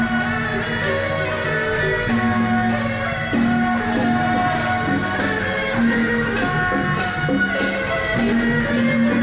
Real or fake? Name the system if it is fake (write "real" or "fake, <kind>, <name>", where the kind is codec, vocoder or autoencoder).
real